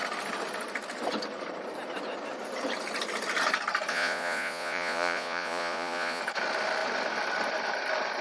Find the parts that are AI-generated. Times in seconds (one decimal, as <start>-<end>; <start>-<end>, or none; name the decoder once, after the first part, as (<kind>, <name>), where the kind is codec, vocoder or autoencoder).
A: 3.9-6.2 (vocoder, Vocos)